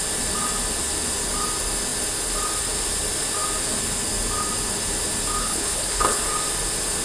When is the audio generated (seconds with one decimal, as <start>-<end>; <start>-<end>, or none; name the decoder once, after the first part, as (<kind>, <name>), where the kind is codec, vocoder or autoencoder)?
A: 5.4-6.2 (codec, HILCodec)